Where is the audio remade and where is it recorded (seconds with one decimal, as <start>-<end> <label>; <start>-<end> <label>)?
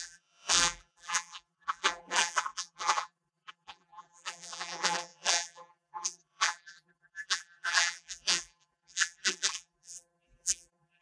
0.0-11.0 remade